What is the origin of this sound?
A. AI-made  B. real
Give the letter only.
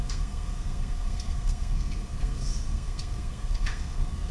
A